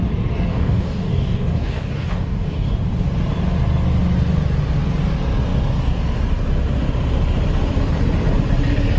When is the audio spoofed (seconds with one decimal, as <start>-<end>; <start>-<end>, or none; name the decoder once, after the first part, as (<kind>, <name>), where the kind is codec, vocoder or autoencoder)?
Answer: 0.5-2.7 (codec, DAC)